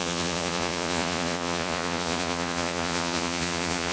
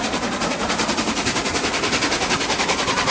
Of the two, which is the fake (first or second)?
first